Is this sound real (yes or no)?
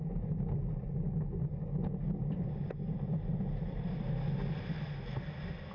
yes